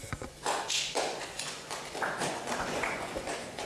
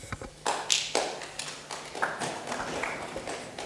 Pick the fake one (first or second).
first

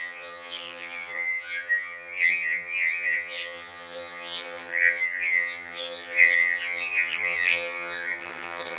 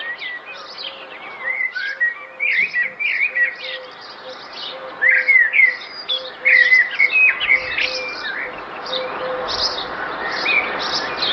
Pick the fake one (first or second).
first